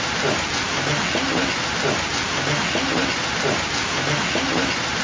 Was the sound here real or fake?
real